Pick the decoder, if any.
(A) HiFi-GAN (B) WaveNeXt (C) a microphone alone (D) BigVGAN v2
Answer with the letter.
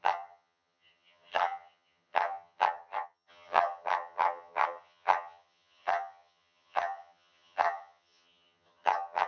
A